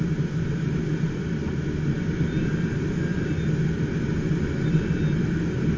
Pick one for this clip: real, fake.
real